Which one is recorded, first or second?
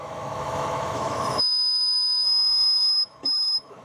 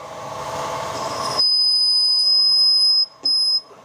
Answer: second